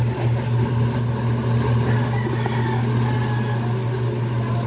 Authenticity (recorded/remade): recorded